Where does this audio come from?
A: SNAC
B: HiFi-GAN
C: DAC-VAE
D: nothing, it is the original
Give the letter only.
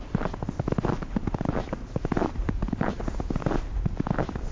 D